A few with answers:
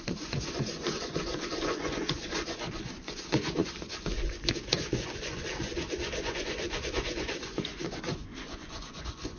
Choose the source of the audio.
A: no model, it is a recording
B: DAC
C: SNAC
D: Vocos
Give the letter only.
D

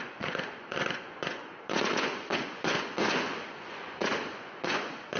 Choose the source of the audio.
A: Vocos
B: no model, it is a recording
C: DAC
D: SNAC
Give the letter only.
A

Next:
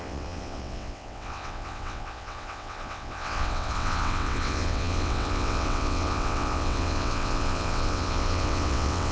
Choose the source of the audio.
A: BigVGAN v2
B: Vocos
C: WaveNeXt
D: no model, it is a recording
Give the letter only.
C